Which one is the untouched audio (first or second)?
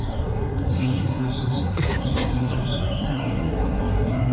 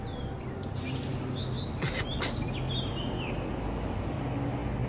second